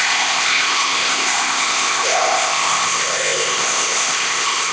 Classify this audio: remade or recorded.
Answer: remade